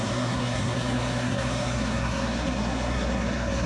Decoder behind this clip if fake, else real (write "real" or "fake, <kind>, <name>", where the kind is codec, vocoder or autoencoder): fake, codec, SNAC